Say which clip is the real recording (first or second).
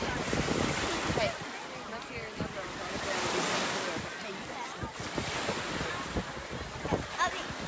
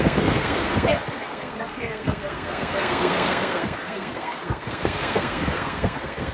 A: first